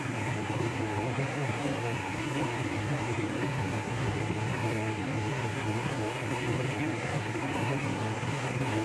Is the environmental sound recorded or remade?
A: remade